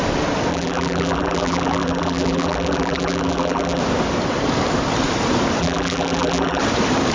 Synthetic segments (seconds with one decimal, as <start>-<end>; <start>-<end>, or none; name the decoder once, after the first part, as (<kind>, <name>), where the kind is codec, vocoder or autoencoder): 0.5-3.8 (vocoder, BigVGAN v2); 5.6-6.6